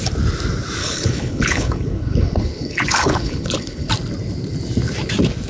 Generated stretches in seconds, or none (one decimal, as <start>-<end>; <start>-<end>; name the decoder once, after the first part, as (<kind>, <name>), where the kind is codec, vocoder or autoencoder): 0.8-3.9 (codec, HILCodec)